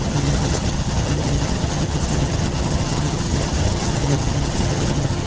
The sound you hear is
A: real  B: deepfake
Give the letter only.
B